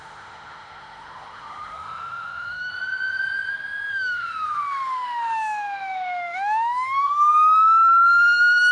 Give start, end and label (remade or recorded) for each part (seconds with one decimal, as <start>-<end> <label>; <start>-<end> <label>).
0.0-2.7 remade; 2.7-3.9 recorded; 3.9-8.7 remade